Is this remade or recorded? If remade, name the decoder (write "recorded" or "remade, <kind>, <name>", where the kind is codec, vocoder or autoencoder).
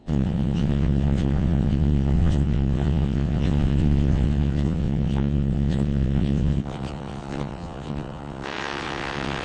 remade, vocoder, WaveNeXt